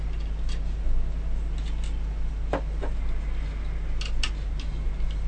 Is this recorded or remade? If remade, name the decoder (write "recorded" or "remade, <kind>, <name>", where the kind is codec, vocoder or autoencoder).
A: recorded